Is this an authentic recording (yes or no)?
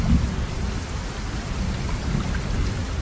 yes